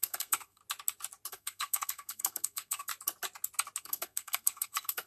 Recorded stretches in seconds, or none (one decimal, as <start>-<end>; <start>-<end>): 0.6-1.3; 2.9-3.8